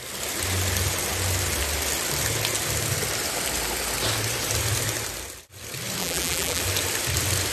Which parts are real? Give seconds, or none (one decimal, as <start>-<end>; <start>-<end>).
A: 0.0-6.0; 6.6-7.5

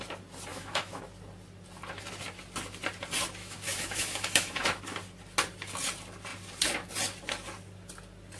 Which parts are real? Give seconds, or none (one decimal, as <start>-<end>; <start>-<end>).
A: 0.0-0.5; 1.0-3.4; 4.8-8.4

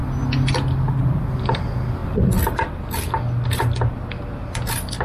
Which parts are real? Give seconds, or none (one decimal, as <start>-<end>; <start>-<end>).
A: 0.0-5.0

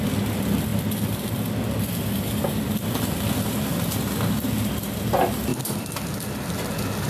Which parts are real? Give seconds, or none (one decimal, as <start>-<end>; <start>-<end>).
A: 0.0-5.5

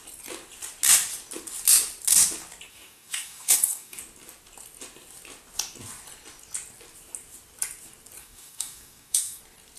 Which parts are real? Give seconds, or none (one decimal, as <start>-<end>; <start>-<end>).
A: 0.0-2.7; 4.0-8.2; 9.4-9.8